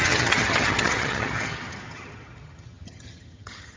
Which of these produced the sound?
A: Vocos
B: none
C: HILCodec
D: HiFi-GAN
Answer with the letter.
D